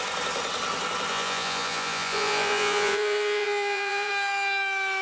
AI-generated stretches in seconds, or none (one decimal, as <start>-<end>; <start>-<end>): 1.1-4.1